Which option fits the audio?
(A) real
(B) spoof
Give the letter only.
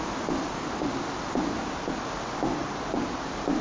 A